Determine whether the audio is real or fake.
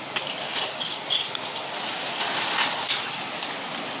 real